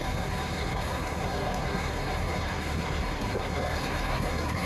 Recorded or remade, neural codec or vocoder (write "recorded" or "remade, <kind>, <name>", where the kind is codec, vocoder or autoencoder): remade, codec, SNAC